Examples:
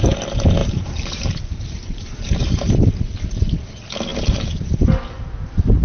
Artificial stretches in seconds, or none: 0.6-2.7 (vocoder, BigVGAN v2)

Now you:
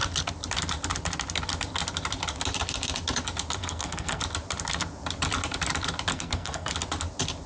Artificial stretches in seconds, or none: 3.6-4.2 (codec, SNAC); 6.1-6.7

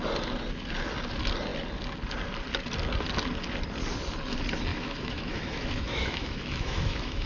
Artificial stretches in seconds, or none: 4.7-7.3 (autoencoder, DAC-VAE)

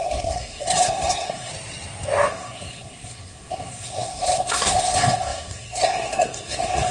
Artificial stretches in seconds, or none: 0.0-1.5 (codec, SNAC); 2.3-6.9

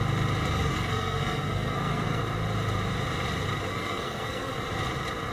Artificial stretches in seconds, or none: 0.7-2.2 (codec, SNAC); 3.7-4.6